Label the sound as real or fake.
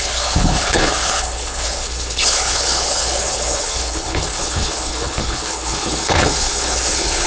fake